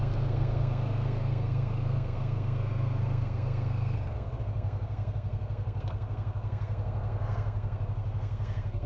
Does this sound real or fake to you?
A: fake